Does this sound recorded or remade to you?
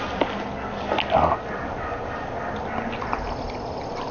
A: recorded